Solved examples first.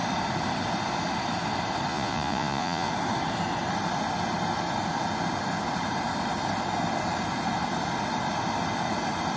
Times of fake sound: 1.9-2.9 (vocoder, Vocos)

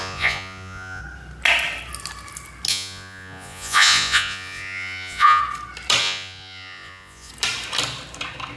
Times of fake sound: 0.0-1.0 (vocoder, Vocos); 2.7-5.4; 6.0-7.3

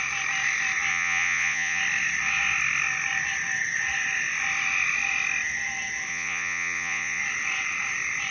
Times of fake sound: 0.9-1.8 (vocoder, Vocos); 6.1-7.2

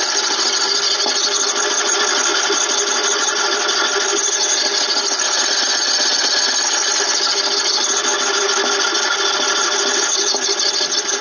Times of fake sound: none

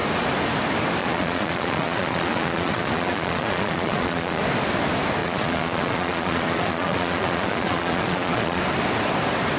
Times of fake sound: 1.0-4.4 (vocoder, Vocos); 5.2-8.6

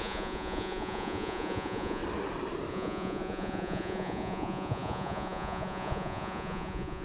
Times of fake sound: 0.0-2.0 (vocoder, Vocos); 2.7-7.0

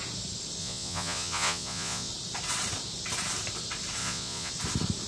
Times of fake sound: 0.6-2.1 (vocoder, Vocos); 4.0-4.5